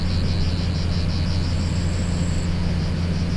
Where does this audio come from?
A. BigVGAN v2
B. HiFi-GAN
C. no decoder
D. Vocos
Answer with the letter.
C